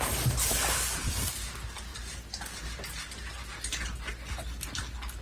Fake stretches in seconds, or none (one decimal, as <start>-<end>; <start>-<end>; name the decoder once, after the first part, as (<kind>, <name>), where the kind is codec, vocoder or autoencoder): none